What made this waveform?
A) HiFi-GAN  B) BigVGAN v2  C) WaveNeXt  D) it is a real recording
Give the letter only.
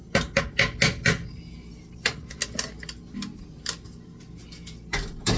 D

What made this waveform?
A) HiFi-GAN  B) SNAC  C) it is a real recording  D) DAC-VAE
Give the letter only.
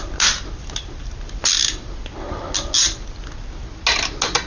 C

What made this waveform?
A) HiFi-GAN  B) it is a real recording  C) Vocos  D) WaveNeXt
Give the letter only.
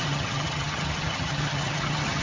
A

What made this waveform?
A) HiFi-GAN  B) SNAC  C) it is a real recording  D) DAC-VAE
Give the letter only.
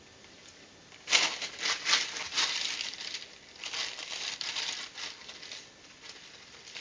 C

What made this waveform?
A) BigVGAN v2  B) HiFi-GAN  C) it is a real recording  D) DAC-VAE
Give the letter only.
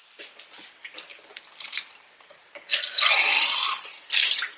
C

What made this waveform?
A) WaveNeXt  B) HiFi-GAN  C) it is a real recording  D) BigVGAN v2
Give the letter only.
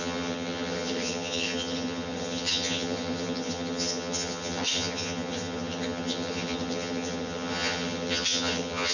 B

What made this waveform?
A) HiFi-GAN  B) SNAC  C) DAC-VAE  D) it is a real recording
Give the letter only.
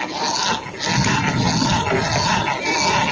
D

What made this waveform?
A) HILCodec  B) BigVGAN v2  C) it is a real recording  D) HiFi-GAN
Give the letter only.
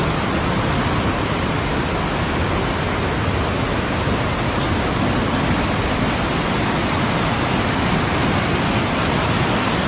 C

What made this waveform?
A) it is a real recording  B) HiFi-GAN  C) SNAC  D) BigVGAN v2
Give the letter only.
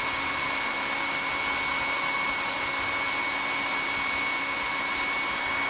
A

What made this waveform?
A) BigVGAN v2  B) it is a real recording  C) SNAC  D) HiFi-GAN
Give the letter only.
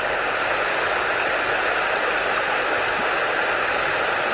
B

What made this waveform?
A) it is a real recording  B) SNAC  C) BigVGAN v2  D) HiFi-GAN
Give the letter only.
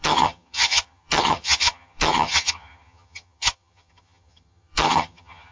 D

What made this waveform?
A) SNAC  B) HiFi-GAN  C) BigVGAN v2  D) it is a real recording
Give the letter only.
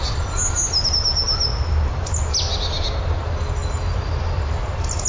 D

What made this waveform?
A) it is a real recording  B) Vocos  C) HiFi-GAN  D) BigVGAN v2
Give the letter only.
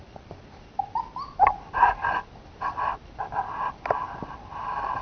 A